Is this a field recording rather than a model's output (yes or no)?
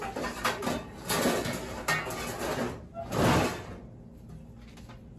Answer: yes